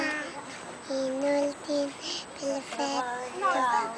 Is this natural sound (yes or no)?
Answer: yes